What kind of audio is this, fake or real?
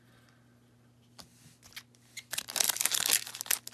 real